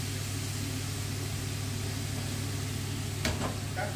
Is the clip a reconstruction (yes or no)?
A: no